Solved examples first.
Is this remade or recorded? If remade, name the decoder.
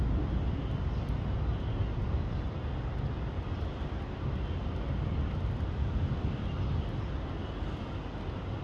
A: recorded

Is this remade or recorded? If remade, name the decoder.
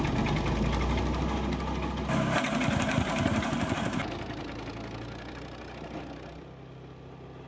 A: recorded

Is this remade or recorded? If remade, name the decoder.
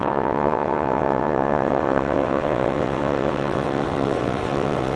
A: remade, vocoder, WaveNeXt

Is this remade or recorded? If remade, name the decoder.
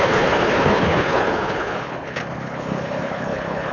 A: remade, codec, HILCodec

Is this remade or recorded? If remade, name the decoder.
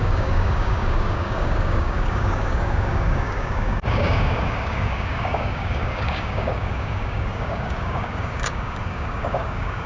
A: remade, codec, DAC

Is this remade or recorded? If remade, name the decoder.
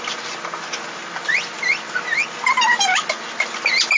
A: recorded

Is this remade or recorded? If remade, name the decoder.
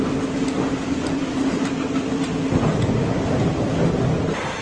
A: recorded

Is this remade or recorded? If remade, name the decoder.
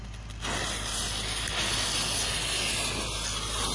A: recorded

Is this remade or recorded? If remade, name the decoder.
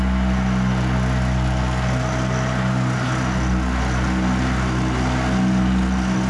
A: recorded